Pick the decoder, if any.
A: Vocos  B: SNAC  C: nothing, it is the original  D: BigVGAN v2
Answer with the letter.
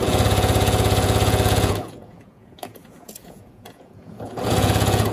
A